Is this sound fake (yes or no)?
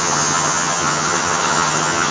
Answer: yes